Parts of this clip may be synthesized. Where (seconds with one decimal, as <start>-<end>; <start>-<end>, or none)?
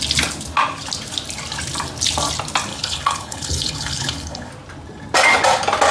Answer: 2.7-4.5